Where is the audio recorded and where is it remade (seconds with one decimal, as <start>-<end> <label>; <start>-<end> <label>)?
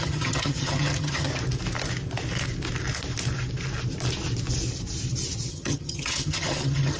0.0-1.3 remade; 1.3-5.5 recorded; 5.5-7.0 remade